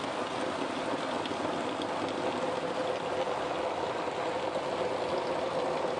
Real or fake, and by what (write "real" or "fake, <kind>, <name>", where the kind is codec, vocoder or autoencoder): real